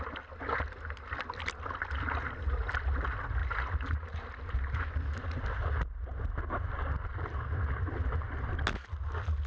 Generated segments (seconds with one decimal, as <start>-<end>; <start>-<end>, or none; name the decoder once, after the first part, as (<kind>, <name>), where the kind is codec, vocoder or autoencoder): none